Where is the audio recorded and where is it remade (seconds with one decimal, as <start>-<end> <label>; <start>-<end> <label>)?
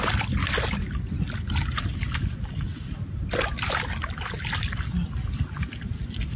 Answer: 0.0-6.4 recorded